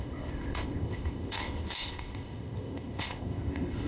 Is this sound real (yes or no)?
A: no